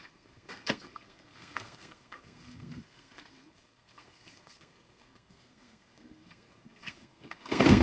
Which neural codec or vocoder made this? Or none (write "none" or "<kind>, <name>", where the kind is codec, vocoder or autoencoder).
codec, SNAC